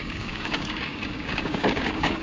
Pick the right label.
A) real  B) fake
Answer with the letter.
B